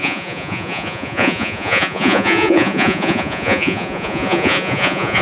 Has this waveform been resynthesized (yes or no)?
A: yes